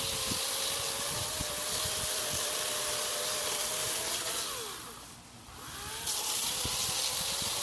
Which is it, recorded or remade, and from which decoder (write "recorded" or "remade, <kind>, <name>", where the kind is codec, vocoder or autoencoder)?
recorded